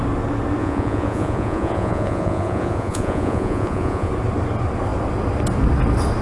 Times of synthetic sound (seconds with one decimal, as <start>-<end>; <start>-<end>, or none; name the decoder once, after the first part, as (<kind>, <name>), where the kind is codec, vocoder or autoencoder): 0.6-4.1 (vocoder, Vocos)